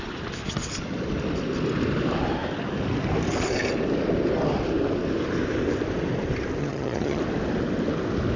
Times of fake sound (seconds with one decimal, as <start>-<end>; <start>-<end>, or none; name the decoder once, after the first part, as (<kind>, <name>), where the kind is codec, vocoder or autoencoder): 6.6-7.2 (vocoder, HiFi-GAN)